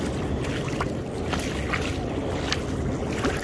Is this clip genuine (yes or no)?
yes